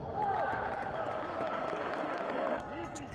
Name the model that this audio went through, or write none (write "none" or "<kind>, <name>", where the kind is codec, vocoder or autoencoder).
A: codec, DAC